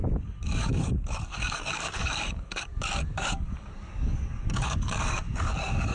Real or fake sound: fake